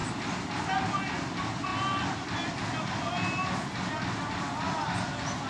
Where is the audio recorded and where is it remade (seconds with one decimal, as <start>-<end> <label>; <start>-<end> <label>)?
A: 0.0-5.5 recorded